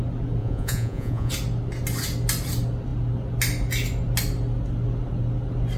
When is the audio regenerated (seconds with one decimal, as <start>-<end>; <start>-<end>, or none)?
0.4-1.3